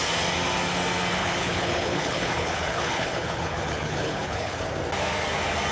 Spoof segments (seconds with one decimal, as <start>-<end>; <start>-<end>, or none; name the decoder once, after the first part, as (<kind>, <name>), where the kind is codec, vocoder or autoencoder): 1.2-4.6 (codec, HILCodec)